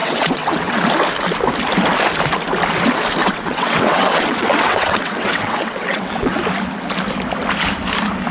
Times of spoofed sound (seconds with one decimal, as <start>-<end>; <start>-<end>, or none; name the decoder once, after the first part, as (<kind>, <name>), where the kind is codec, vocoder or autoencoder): 0.0-0.8 (vocoder, WaveNeXt); 3.2-6.4

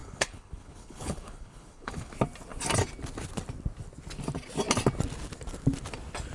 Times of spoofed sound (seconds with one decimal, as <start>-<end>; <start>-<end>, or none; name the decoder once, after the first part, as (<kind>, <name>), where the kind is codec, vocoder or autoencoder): 0.0-2.1 (codec, HILCodec)

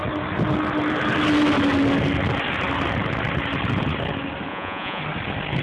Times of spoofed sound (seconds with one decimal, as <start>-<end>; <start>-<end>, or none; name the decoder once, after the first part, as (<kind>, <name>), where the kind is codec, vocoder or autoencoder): 4.5-5.0 (vocoder, Vocos)

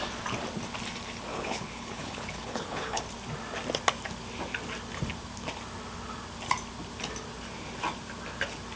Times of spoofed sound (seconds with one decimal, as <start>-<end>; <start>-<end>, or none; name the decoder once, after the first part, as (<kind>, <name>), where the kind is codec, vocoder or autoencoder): 1.3-3.0 (codec, HILCodec)

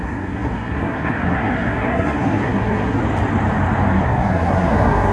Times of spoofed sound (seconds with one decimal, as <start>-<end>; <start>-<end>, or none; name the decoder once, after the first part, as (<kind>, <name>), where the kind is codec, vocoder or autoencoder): 0.0-3.0 (codec, SNAC); 4.0-5.1

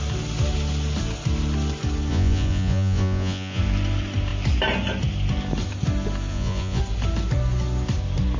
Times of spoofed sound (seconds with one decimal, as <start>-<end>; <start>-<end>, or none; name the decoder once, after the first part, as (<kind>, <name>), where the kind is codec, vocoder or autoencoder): 2.1-3.6 (vocoder, Vocos); 6.3-6.8

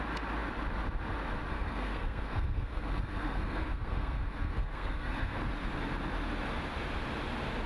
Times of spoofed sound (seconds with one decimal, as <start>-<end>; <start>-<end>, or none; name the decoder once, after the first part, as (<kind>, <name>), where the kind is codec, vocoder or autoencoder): 1.5-5.4 (codec, SNAC)